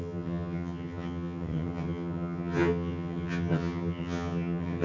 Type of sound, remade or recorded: remade